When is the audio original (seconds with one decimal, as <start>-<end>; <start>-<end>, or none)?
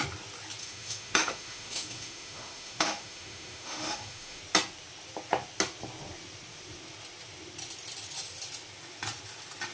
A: 0.0-0.6; 4.4-9.7